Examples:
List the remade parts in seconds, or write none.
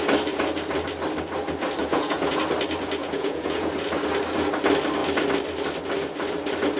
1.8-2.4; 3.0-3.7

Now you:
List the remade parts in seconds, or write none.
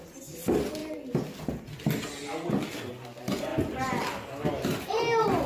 none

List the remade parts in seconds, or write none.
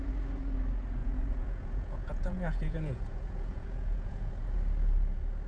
1.0-4.3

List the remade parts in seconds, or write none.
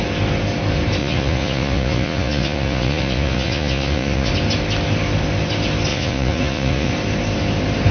1.0-4.3; 5.9-6.9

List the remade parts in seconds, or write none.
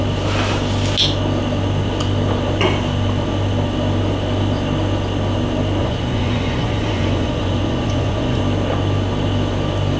5.8-8.4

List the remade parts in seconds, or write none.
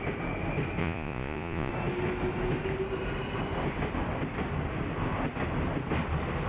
0.8-1.7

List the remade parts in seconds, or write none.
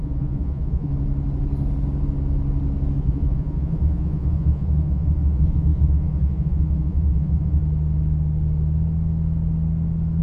0.0-0.9; 3.0-7.6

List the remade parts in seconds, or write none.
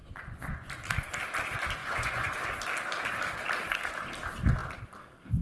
0.0-0.7; 1.8-2.4